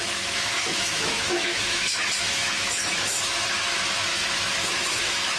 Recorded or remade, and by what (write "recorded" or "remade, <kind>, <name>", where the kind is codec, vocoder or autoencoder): remade, autoencoder, DAC-VAE